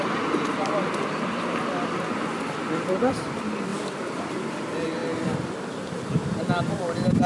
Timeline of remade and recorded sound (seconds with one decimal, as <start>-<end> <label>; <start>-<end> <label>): 0.0-7.3 recorded